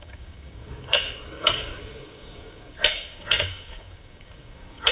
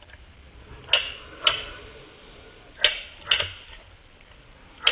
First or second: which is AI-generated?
first